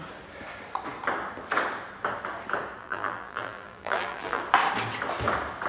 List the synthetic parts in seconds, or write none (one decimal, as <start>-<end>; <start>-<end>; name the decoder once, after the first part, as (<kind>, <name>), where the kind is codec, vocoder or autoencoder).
2.8-4.4 (vocoder, BigVGAN v2)